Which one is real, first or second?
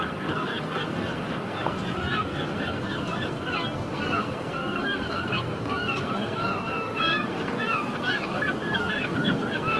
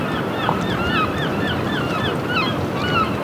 second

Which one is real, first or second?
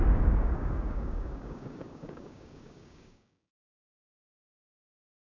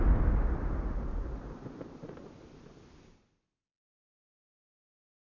second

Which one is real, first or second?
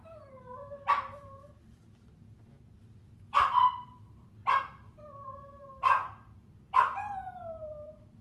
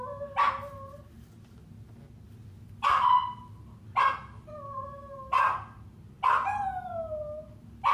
second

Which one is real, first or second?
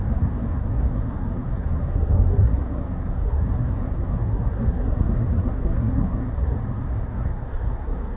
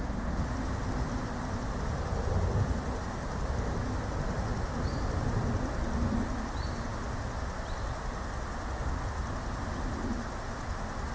second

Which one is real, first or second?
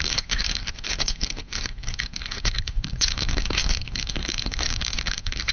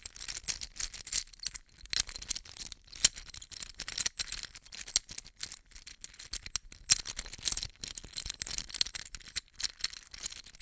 second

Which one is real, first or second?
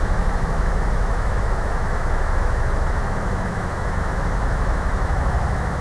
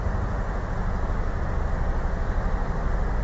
second